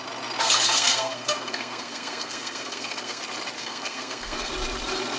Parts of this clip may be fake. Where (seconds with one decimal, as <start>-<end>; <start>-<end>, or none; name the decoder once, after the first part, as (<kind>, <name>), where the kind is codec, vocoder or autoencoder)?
0.4-3.2 (codec, SNAC); 3.6-4.5